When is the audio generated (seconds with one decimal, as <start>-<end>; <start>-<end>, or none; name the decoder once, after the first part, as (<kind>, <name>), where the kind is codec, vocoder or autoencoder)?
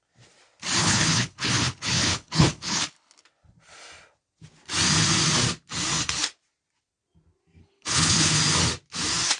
0.8-3.2 (codec, HILCodec); 7.6-8.4